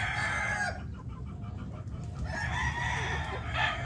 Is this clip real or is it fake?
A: real